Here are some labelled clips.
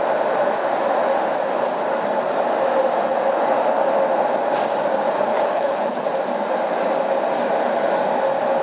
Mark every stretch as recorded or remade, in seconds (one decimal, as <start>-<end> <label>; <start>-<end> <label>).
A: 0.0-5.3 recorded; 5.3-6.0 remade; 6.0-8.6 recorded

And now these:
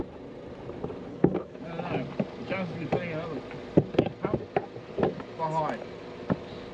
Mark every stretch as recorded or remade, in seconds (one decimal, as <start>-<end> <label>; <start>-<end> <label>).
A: 0.0-1.1 recorded; 1.1-1.6 remade; 1.6-6.7 recorded

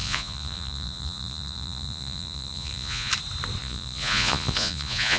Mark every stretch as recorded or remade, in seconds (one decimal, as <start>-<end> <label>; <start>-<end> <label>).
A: 0.0-3.1 remade; 3.1-3.6 recorded; 3.6-5.2 remade

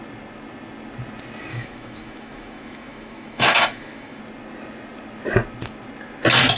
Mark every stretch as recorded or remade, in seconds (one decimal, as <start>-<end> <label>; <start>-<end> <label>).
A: 0.0-1.5 recorded; 1.5-4.2 remade; 4.2-6.6 recorded

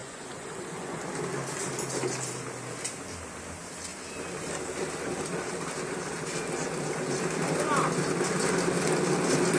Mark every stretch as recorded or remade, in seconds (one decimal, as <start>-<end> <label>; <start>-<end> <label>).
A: 0.0-1.0 remade; 1.0-9.6 recorded

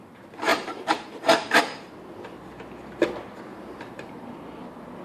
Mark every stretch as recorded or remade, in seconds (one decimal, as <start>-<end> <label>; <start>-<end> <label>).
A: 0.0-0.5 recorded; 0.5-1.6 remade; 1.6-3.5 recorded; 3.5-4.3 remade; 4.3-5.0 recorded